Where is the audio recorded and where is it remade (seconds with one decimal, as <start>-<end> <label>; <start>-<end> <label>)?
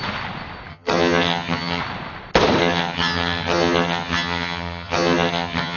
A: 0.0-0.7 recorded; 0.7-1.8 remade; 1.8-2.6 recorded; 2.6-5.8 remade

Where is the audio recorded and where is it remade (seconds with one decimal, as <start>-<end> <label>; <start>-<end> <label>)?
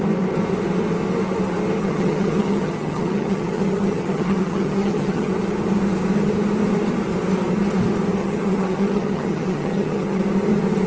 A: 0.0-1.8 recorded; 1.8-5.3 remade; 5.3-8.2 recorded; 8.2-10.2 remade; 10.2-10.9 recorded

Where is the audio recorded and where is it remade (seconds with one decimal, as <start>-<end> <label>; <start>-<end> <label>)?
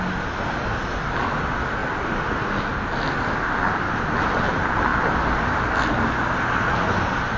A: 0.0-7.4 recorded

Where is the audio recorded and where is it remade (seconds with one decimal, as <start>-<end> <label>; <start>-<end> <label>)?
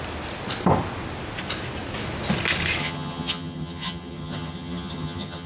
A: 0.0-2.8 recorded; 2.8-5.5 remade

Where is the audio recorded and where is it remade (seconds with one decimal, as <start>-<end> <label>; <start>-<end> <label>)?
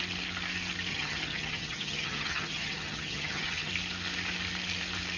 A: 0.0-0.9 recorded; 0.9-3.7 remade; 3.7-5.2 recorded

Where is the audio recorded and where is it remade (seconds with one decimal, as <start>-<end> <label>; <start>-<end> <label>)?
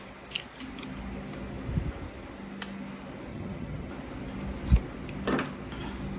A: 0.0-3.3 recorded; 3.3-3.9 remade; 3.9-6.2 recorded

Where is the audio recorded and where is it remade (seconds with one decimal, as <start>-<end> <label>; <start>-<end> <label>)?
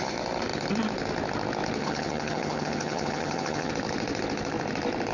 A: 0.0-1.8 recorded; 1.8-3.7 remade; 3.7-5.1 recorded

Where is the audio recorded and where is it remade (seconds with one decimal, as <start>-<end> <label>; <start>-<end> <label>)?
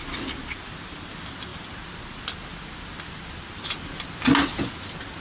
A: 0.0-5.2 recorded